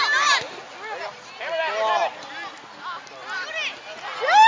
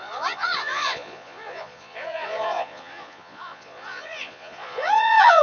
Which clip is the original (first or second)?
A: first